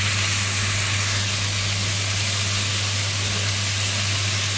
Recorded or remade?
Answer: recorded